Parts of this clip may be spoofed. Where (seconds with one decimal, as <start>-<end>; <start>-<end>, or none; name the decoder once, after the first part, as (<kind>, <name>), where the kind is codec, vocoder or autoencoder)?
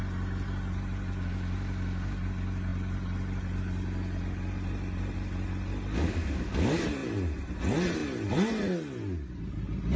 none